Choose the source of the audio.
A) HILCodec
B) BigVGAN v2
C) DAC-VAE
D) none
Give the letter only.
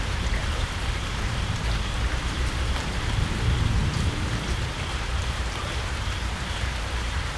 B